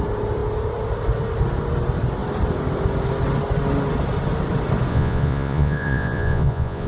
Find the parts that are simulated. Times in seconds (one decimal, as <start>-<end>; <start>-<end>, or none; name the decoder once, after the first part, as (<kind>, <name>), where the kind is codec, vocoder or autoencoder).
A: 4.9-6.9 (vocoder, Vocos)